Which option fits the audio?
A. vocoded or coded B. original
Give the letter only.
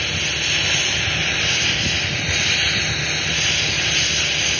B